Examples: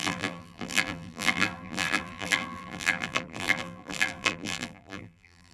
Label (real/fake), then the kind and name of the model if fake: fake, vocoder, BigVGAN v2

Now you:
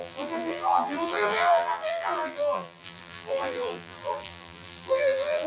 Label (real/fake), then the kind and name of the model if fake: fake, vocoder, BigVGAN v2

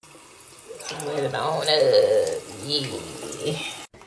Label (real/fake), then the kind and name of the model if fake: real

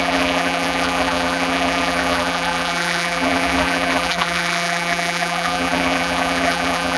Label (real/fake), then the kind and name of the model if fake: fake, vocoder, BigVGAN v2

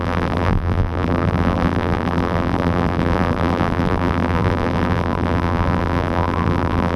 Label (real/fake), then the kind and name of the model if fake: fake, vocoder, BigVGAN v2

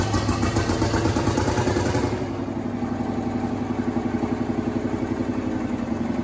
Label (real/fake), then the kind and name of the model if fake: real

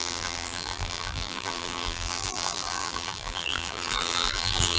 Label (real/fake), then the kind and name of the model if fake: fake, vocoder, BigVGAN v2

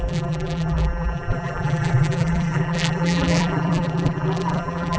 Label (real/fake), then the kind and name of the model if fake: fake, vocoder, BigVGAN v2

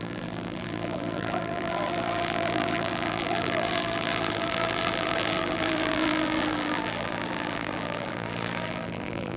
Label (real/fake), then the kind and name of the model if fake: fake, vocoder, BigVGAN v2